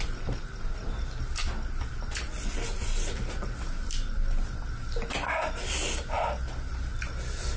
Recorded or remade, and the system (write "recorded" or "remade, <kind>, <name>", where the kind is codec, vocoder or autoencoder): recorded